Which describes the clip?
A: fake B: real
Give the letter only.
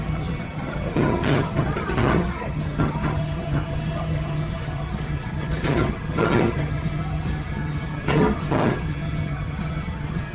A